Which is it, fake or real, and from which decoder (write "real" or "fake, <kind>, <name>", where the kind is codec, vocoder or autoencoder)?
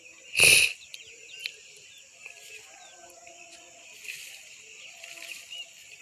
fake, vocoder, BigVGAN v2